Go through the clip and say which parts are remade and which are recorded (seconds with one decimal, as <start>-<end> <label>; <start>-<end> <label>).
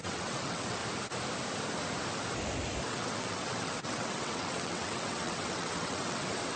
0.0-0.8 remade; 0.8-2.9 recorded; 2.9-6.6 remade